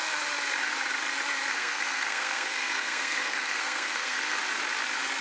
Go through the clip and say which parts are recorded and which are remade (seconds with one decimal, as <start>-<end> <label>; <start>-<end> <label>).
0.0-1.5 recorded; 1.5-4.4 remade; 4.4-5.2 recorded